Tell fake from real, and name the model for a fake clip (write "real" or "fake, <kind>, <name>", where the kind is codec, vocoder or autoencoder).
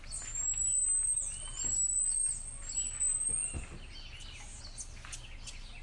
real